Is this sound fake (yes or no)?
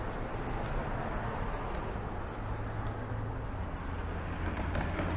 no